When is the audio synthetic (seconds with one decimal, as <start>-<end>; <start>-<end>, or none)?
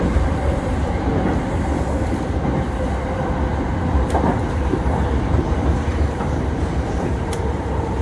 0.0-1.1; 5.9-8.0